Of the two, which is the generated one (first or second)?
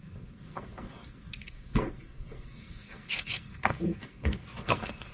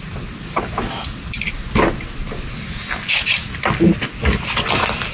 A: first